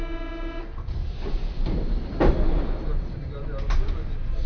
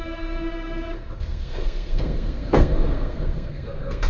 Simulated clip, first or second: second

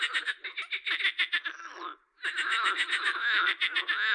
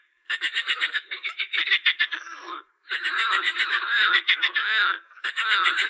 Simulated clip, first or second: second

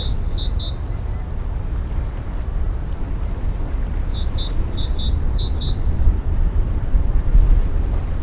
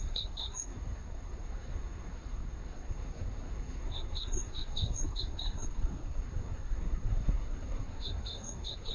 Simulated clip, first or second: second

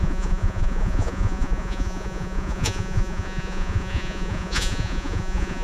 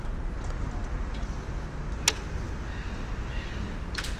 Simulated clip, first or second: first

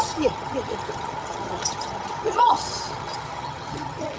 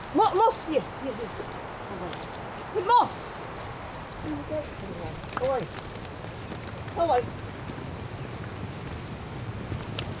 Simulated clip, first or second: first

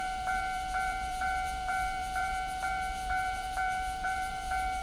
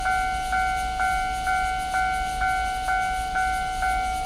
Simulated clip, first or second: first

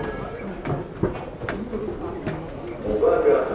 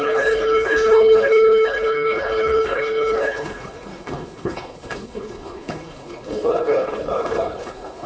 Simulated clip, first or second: second